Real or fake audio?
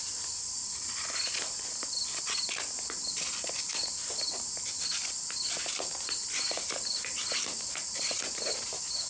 real